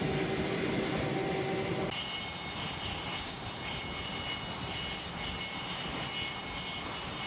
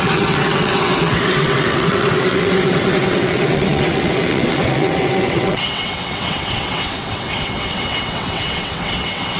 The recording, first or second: first